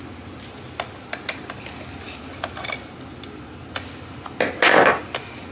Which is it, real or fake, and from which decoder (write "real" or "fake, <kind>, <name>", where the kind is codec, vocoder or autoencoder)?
real